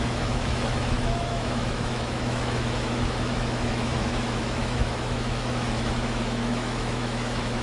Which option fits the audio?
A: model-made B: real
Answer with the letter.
A